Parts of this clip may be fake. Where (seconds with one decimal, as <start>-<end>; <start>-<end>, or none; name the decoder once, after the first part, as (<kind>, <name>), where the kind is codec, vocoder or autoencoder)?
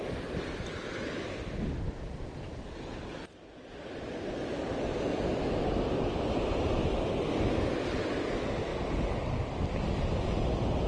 none